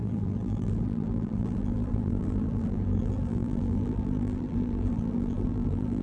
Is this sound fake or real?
fake